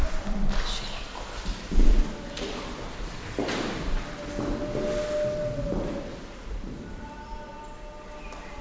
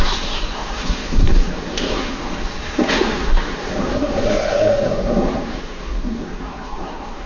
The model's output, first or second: second